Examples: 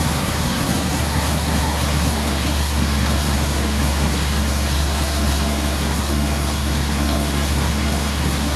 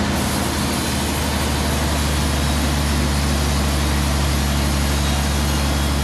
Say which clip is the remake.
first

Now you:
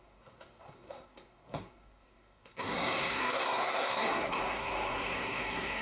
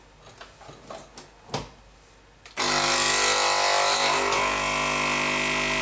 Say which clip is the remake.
first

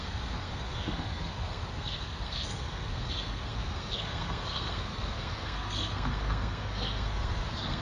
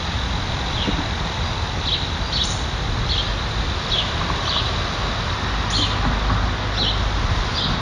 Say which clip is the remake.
first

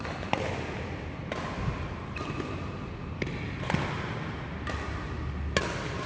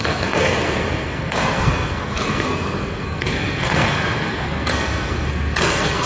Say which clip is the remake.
second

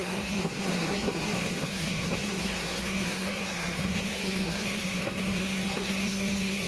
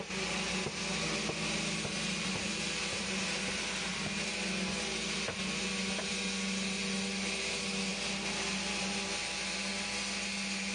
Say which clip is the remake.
first